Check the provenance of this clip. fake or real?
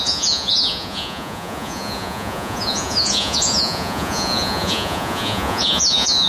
fake